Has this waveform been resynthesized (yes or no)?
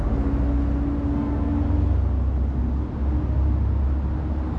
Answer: no